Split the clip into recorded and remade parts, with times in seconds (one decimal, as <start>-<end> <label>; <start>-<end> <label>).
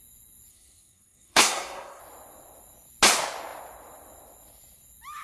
0.0-0.5 recorded; 0.5-2.0 remade; 2.0-5.2 recorded